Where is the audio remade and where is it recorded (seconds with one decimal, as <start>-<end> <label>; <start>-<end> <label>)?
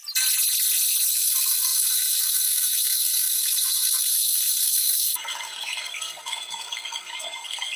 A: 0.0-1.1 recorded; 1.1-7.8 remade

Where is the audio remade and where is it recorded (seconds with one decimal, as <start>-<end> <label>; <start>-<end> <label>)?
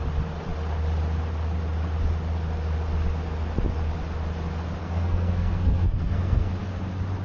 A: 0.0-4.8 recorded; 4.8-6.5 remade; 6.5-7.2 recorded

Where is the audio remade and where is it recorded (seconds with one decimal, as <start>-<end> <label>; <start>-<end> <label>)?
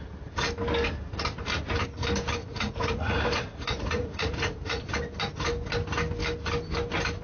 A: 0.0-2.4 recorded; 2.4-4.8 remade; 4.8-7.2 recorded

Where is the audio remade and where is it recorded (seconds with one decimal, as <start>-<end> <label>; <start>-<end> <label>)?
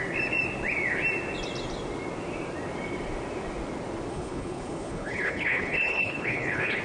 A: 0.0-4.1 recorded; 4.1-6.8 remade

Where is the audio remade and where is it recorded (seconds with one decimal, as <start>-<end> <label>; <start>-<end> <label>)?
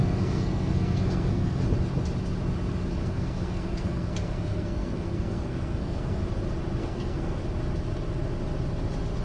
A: 0.0-1.6 remade; 1.6-3.0 recorded; 3.0-6.2 remade; 6.2-6.8 recorded; 6.8-7.4 remade; 7.4-9.2 recorded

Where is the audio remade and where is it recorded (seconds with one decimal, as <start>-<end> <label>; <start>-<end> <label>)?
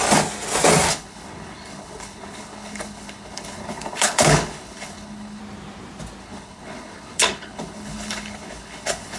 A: 0.0-0.9 recorded; 0.9-5.4 remade; 5.4-6.2 recorded; 6.2-9.2 remade